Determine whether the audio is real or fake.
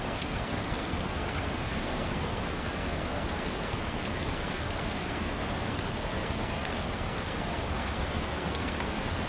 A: fake